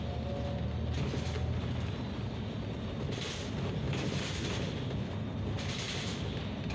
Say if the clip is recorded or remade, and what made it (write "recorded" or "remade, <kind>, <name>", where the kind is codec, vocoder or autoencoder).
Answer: recorded